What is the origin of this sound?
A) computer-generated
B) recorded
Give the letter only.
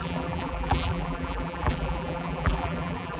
A